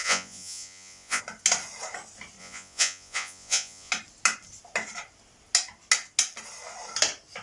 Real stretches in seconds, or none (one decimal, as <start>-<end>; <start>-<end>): 1.2-2.4; 3.9-7.4